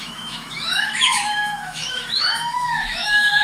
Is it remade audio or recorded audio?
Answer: remade